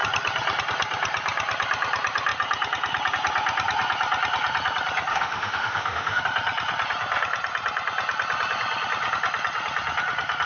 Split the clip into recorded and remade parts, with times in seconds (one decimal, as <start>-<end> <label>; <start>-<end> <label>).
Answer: 0.0-5.1 recorded; 5.1-6.2 remade; 6.2-10.5 recorded